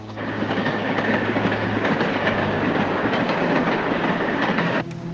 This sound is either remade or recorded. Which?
remade